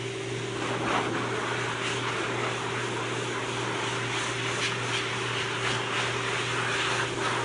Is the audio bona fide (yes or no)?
yes